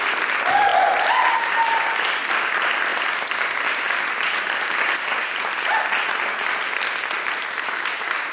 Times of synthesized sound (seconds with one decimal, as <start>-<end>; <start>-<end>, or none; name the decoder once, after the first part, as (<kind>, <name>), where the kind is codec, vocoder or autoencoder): none